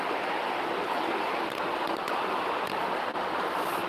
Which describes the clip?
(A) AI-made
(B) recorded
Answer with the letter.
B